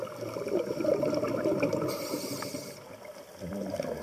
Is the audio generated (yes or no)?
no